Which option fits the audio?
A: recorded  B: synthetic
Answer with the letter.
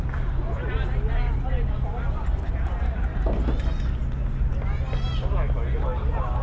A